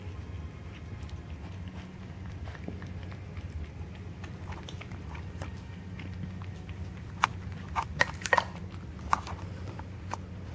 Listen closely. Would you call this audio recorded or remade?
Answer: recorded